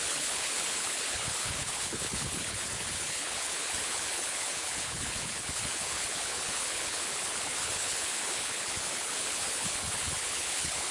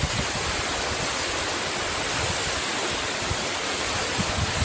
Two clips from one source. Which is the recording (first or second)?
second